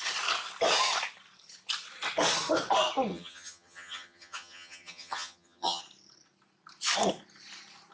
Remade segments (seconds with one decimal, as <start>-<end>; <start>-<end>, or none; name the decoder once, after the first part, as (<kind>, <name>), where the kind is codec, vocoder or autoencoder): 3.1-5.8 (vocoder, HiFi-GAN)